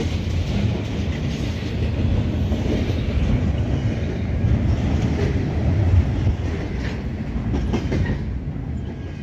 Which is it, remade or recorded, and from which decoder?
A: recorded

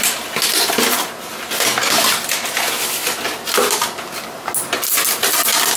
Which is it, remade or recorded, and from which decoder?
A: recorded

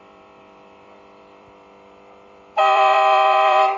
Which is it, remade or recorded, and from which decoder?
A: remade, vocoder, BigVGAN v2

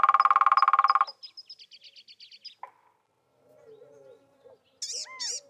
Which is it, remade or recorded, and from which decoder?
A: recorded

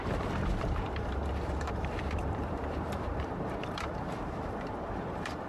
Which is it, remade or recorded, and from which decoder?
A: remade, vocoder, BigVGAN v2